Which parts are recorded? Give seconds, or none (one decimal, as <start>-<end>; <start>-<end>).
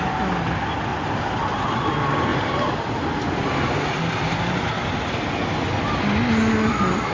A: 0.0-7.1